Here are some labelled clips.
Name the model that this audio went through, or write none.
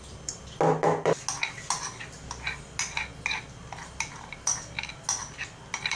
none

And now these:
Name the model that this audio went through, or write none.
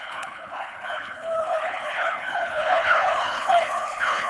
codec, HILCodec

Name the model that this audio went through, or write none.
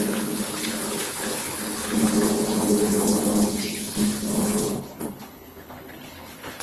codec, HILCodec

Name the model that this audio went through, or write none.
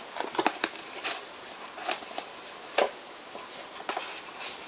none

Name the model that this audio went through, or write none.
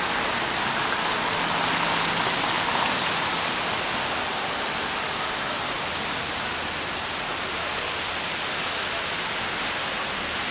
none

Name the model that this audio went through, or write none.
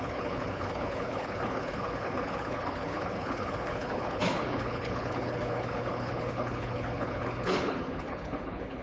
codec, HILCodec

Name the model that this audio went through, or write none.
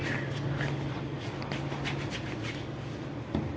none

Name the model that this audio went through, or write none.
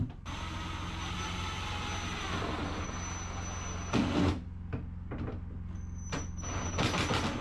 none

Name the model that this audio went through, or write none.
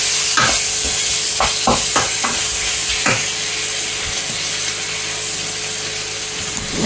none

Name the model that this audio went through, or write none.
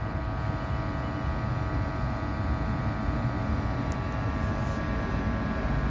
none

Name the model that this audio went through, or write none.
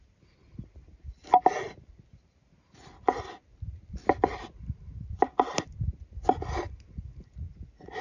none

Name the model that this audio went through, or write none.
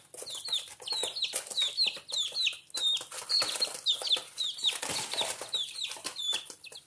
none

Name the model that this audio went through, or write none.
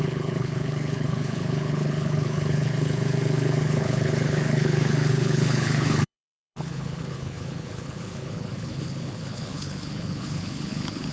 codec, HILCodec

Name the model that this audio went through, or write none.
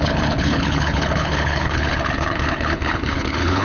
codec, HILCodec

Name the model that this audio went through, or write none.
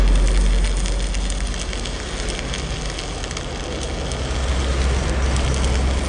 none